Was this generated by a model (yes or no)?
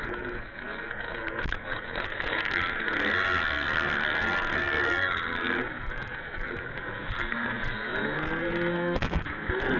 yes